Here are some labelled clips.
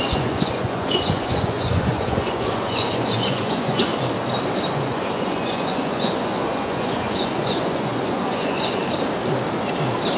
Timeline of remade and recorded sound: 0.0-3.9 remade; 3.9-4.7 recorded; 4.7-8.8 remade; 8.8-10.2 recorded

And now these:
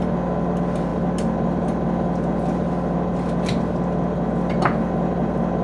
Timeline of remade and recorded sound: 0.0-5.6 recorded

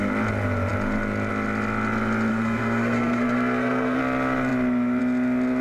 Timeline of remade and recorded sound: 0.0-2.3 recorded; 2.3-4.0 remade; 4.0-5.6 recorded

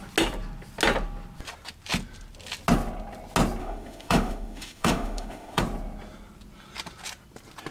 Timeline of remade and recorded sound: 0.0-3.6 recorded; 3.6-5.6 remade; 5.6-7.7 recorded

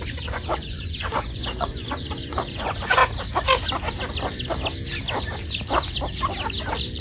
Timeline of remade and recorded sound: 0.0-3.0 remade; 3.0-7.0 recorded